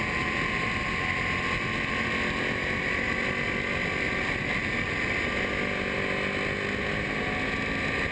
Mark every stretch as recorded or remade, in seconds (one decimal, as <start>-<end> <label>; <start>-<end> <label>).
0.0-8.1 recorded